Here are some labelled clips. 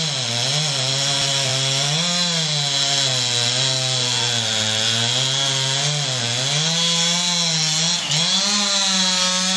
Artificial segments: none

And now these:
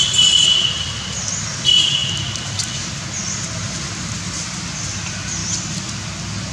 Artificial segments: 5.4-5.9 (vocoder, BigVGAN v2)